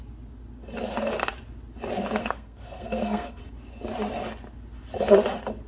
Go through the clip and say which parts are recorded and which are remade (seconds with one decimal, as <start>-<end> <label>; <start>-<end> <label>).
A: 0.0-2.2 recorded; 2.2-3.4 remade; 3.4-5.7 recorded